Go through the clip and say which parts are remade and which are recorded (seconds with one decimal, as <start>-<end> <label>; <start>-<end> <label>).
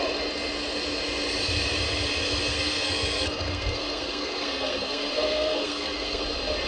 0.0-2.5 recorded; 2.5-6.2 remade; 6.2-6.7 recorded